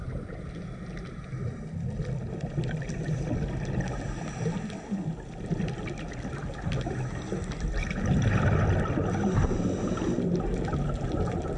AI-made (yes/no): no